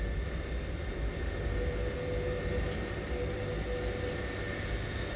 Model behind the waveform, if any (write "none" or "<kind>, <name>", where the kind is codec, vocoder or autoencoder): none